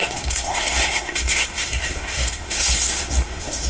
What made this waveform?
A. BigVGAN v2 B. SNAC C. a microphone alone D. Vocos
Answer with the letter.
B